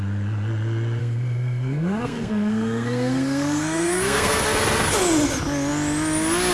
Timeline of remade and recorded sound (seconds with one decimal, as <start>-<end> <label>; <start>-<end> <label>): 0.0-1.0 recorded; 1.0-4.4 remade; 4.4-6.5 recorded